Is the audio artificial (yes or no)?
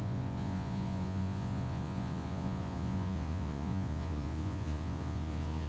yes